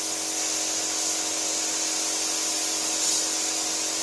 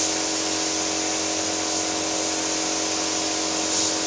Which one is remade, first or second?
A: first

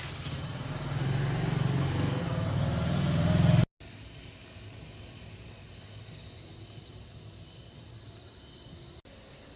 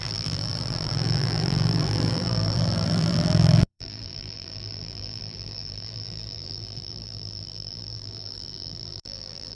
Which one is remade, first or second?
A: second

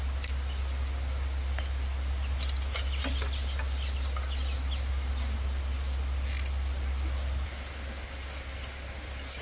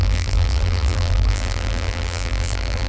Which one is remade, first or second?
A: second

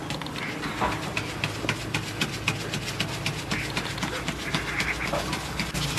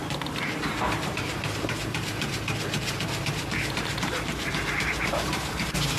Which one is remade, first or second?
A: second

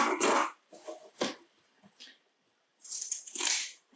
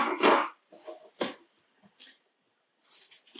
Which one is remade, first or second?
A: first